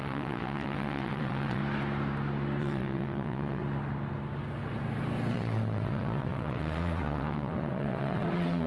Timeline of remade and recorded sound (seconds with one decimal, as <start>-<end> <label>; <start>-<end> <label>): 0.0-1.6 remade; 1.6-2.6 recorded; 2.6-3.6 remade; 3.6-5.3 recorded; 5.3-8.7 remade

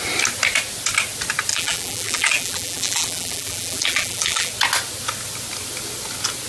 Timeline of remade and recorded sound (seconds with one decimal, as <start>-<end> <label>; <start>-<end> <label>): 0.0-1.5 recorded; 1.5-4.5 remade; 4.5-6.5 recorded

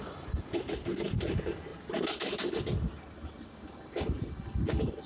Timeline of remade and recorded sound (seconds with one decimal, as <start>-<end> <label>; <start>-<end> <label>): 0.0-5.1 recorded

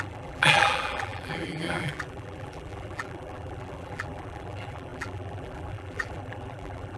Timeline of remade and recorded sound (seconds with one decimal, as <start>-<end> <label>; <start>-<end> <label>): 0.0-7.0 remade

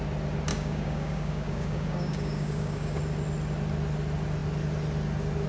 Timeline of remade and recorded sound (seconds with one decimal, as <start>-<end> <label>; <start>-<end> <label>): 0.0-0.5 recorded; 0.5-3.0 remade; 3.0-5.5 recorded

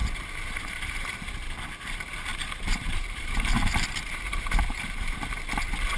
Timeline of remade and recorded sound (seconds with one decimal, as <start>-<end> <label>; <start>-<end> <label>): 0.0-2.3 recorded; 2.3-5.4 remade; 5.4-6.0 recorded